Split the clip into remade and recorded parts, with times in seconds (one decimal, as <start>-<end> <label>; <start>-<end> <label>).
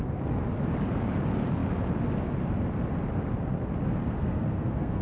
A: 0.0-3.9 recorded; 3.9-5.0 remade